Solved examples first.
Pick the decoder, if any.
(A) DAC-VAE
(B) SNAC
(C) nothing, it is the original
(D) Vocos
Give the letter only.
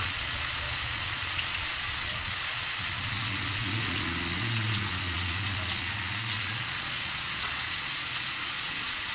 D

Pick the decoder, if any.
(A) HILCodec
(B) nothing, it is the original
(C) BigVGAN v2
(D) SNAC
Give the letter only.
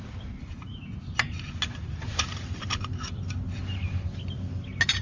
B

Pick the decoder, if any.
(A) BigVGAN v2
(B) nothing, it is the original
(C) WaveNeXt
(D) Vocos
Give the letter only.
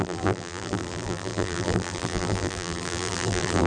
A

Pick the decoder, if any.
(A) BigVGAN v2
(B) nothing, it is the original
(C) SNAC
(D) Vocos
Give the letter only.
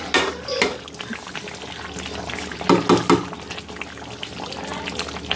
B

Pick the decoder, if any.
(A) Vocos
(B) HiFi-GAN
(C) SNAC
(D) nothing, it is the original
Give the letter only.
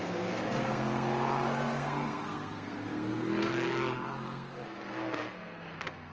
C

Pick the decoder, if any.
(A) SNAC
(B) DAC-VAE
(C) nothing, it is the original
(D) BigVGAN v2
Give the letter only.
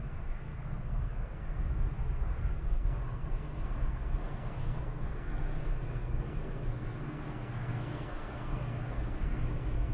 A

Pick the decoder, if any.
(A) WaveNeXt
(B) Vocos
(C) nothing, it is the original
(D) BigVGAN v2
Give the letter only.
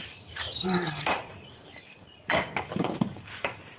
D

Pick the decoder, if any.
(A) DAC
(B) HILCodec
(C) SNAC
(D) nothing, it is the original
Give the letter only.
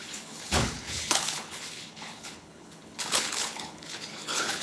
B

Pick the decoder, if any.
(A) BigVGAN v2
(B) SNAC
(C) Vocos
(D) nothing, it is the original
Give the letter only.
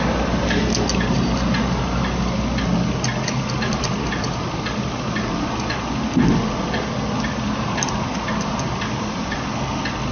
D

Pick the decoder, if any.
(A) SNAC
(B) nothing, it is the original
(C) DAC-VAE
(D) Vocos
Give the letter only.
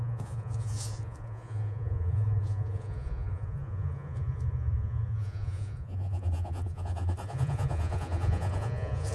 D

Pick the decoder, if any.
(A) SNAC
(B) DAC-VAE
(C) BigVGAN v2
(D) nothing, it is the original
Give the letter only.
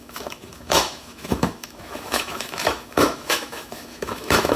B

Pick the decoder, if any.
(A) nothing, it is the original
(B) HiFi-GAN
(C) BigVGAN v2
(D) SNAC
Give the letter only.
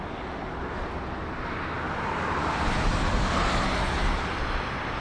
A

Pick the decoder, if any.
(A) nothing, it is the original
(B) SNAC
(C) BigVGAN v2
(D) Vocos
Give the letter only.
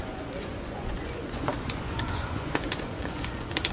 D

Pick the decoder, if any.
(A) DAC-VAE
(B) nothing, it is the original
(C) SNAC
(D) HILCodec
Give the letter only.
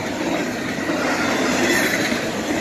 B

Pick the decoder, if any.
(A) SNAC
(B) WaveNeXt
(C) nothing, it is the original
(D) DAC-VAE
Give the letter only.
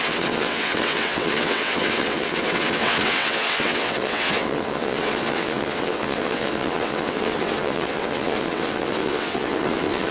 B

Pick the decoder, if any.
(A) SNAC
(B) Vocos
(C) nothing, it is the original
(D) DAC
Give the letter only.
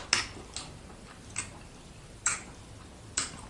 C